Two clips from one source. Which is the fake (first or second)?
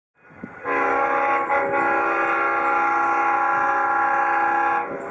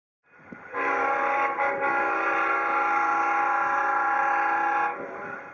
second